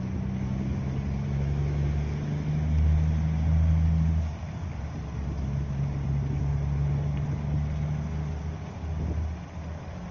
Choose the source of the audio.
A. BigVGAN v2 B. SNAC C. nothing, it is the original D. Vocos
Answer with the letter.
C